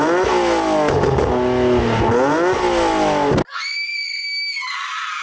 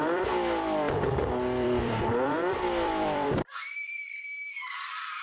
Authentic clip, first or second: first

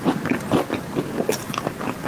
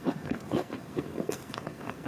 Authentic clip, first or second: first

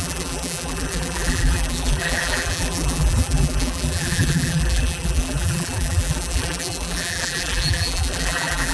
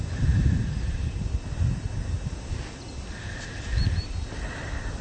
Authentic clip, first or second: second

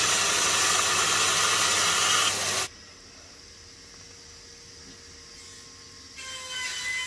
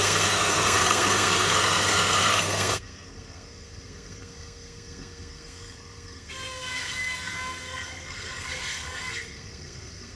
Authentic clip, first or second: first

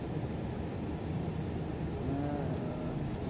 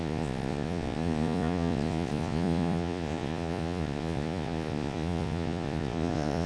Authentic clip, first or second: first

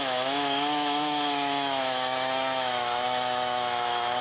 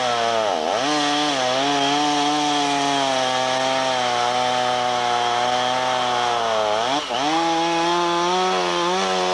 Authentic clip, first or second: second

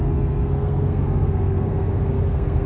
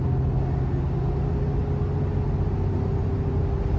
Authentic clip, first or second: second